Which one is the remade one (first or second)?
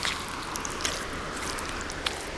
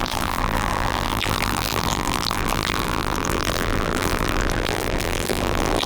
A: second